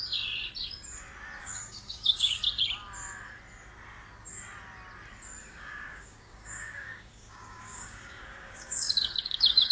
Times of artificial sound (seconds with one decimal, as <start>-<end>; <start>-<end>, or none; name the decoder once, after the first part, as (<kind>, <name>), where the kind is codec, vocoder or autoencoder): 1.4-2.4 (codec, DAC); 5.4-9.7